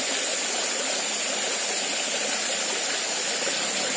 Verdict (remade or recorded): recorded